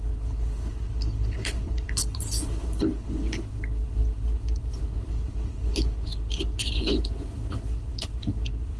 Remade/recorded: remade